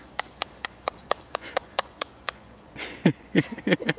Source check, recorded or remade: remade